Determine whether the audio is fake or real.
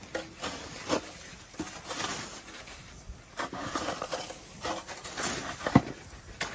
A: real